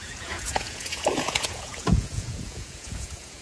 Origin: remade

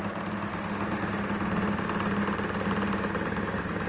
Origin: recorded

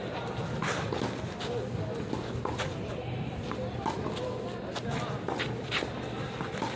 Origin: recorded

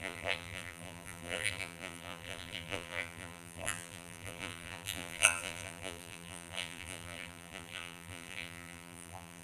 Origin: remade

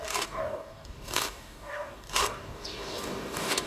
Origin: remade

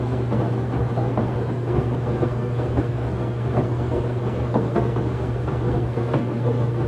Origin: remade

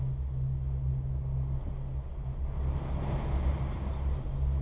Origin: recorded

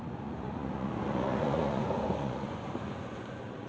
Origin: remade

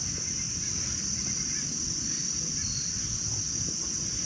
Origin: recorded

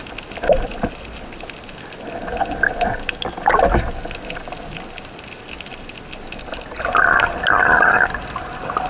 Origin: recorded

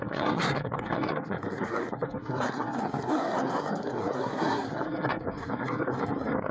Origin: remade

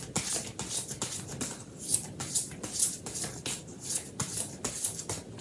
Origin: recorded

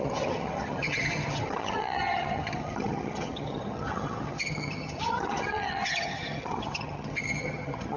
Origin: remade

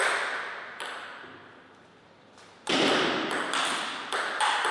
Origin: recorded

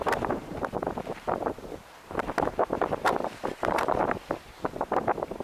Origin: remade